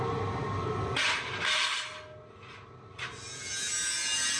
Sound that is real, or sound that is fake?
real